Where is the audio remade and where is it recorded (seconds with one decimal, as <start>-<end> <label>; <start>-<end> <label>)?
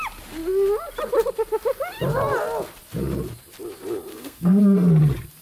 0.0-4.1 recorded; 4.1-4.6 remade; 4.6-5.4 recorded